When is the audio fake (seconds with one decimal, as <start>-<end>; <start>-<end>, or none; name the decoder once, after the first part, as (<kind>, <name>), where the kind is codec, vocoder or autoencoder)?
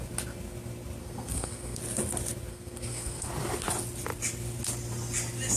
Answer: 1.0-1.8 (codec, SNAC); 2.5-3.3